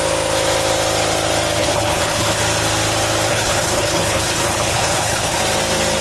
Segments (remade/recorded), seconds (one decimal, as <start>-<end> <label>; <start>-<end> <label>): 0.0-1.6 recorded; 1.6-2.4 remade; 2.4-3.3 recorded; 3.3-5.4 remade; 5.4-6.0 recorded